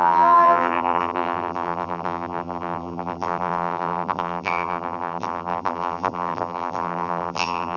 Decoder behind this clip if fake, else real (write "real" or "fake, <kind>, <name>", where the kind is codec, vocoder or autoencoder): fake, vocoder, BigVGAN v2